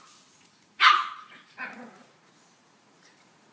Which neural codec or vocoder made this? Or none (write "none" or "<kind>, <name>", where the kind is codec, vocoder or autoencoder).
vocoder, Vocos